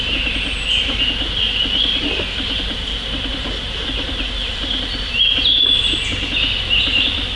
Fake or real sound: real